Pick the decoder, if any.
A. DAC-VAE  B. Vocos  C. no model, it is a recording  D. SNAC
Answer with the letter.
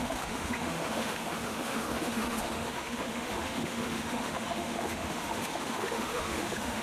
A